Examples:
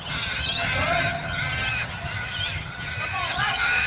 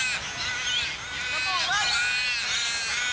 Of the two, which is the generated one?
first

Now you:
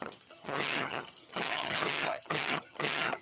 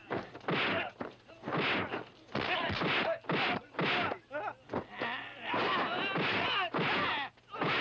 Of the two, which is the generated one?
first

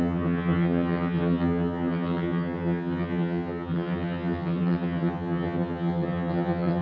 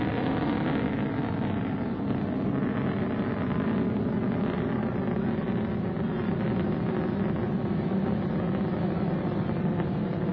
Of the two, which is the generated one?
first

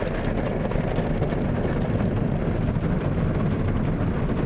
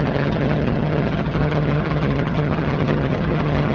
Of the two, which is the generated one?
second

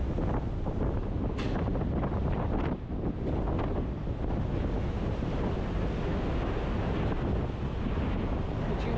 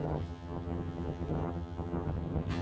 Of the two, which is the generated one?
second